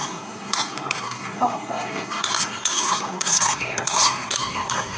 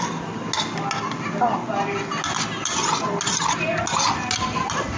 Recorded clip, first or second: second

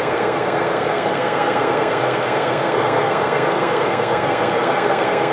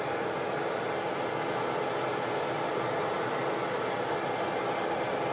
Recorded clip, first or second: second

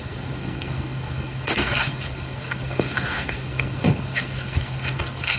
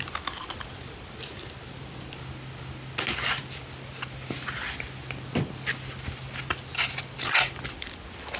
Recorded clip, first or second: second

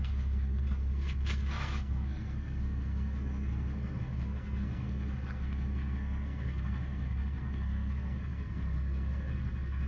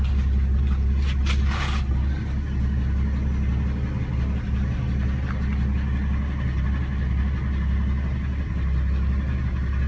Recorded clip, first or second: second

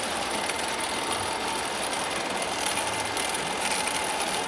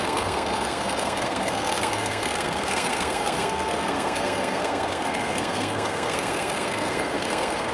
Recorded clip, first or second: first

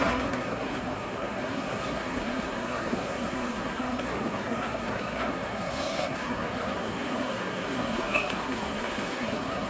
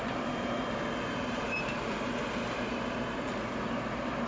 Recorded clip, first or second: second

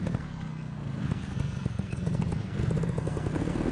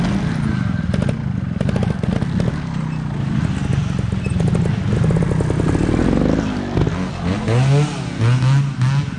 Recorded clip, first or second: second